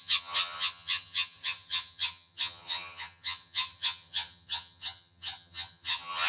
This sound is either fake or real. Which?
fake